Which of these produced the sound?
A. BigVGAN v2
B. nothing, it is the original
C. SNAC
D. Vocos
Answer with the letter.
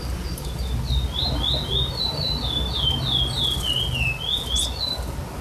B